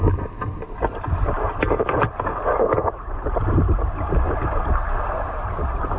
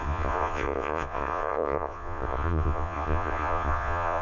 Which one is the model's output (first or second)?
second